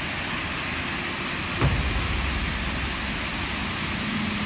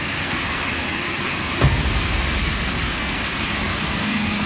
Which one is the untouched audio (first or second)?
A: first